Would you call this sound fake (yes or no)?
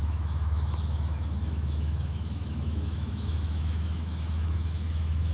yes